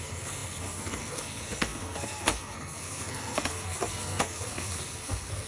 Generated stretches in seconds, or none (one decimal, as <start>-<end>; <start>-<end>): 0.0-5.5